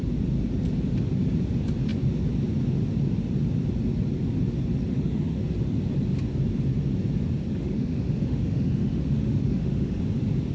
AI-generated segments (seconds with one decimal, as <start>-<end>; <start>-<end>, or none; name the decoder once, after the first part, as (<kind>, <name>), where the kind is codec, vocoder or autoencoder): 4.9-5.4 (autoencoder, DAC-VAE); 7.6-10.0